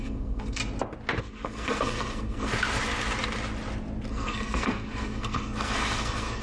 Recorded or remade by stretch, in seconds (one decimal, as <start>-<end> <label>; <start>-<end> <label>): 0.0-0.6 remade; 0.6-1.2 recorded; 1.2-2.5 remade; 2.5-4.1 recorded; 4.1-6.4 remade